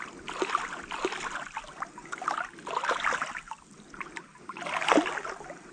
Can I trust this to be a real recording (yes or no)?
yes